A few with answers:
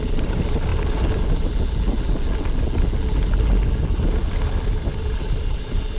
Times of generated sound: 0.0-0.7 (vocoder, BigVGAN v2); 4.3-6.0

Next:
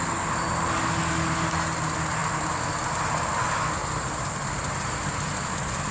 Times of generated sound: 2.2-2.7 (vocoder, BigVGAN v2); 3.8-5.4

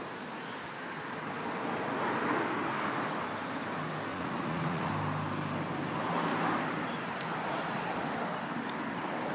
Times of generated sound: 4.1-4.9 (vocoder, Vocos)

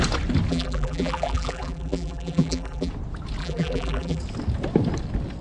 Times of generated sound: 0.5-2.9 (vocoder, BigVGAN v2); 3.4-4.2